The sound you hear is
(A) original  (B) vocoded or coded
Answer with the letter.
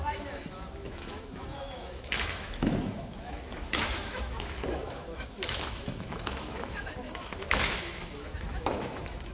B